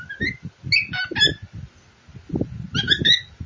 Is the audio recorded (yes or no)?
yes